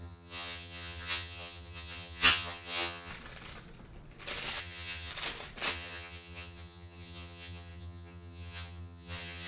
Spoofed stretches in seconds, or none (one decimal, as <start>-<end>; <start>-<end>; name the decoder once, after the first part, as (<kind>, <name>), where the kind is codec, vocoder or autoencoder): 0.0-3.1 (vocoder, HiFi-GAN); 4.6-5.1; 5.7-9.5